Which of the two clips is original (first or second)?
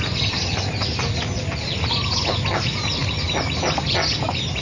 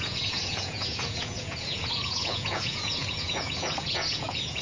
first